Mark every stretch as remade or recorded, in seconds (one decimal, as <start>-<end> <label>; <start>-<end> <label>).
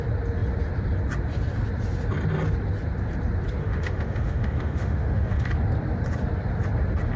0.0-3.6 recorded; 3.6-5.5 remade; 5.5-7.2 recorded